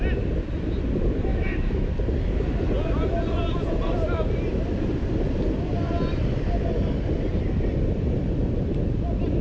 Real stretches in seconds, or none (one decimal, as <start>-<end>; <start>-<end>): 0.0-1.3; 1.9-9.4

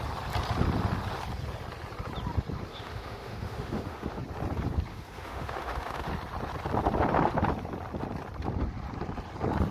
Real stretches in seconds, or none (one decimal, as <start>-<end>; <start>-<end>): 0.0-2.7; 4.2-4.9; 6.1-9.7

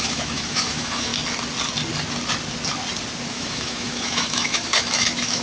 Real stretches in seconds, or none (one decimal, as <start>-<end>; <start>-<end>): 1.1-3.3

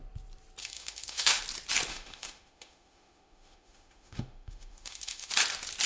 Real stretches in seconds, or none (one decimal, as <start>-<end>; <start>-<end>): 0.0-0.6; 1.4-1.9; 5.3-5.9

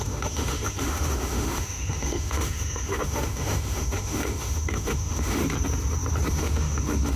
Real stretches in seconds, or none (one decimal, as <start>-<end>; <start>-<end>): 5.4-6.3